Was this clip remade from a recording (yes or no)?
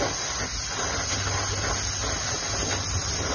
no